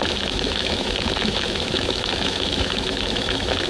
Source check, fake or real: fake